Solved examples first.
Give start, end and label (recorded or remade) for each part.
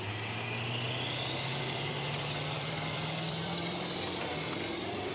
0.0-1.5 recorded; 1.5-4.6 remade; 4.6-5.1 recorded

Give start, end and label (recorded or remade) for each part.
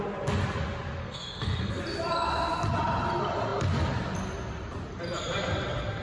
0.0-1.0 recorded; 1.0-1.8 remade; 1.8-6.0 recorded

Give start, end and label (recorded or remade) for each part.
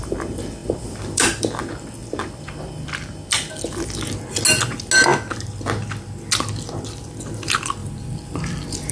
0.0-0.6 recorded; 0.6-1.4 remade; 1.4-2.0 recorded; 2.0-3.5 remade; 3.5-7.8 recorded; 7.8-8.9 remade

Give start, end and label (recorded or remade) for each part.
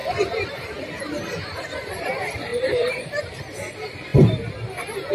0.0-2.0 remade; 2.0-2.5 recorded; 2.5-3.4 remade; 3.4-5.1 recorded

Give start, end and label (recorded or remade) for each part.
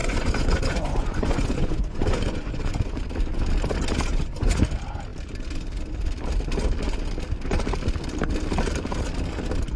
0.0-3.0 remade; 3.0-4.1 recorded; 4.1-4.6 remade; 4.6-9.8 recorded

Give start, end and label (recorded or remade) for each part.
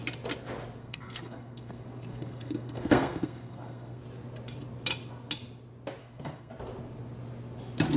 0.0-0.8 recorded; 0.8-4.0 remade; 4.0-6.0 recorded; 6.0-6.5 remade; 6.5-8.0 recorded